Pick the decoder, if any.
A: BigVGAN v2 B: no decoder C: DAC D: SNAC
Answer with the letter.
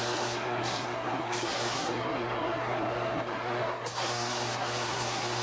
D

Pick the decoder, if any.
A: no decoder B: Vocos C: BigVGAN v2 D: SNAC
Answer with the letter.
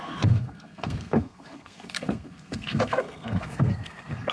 D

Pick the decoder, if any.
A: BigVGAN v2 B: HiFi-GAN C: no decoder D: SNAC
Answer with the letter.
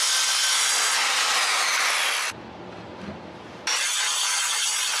C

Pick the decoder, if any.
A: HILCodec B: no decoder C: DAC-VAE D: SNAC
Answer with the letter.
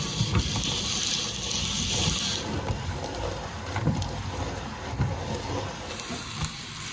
B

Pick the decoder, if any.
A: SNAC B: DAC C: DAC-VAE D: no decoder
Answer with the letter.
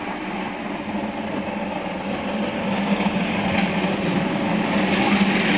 D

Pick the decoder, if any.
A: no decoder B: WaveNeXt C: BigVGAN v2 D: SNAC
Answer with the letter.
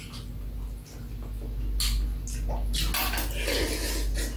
A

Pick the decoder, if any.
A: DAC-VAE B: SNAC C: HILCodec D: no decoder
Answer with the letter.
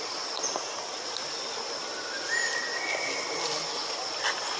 D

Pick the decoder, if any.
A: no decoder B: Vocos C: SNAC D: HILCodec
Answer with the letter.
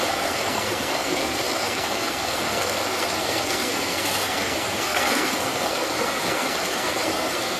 C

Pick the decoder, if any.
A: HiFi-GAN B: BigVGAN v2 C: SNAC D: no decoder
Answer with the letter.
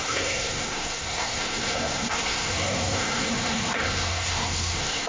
C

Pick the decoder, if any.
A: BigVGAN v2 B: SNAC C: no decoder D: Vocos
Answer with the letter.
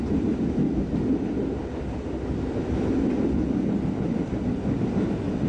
C